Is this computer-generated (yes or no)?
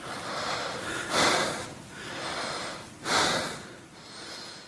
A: no